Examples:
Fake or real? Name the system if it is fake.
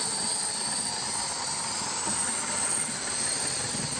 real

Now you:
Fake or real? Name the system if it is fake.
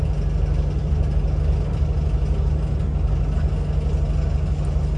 real